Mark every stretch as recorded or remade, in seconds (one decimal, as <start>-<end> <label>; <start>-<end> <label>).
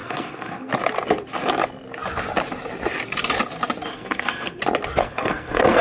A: 0.0-0.7 remade; 0.7-3.9 recorded; 3.9-4.6 remade; 4.6-5.0 recorded; 5.0-5.8 remade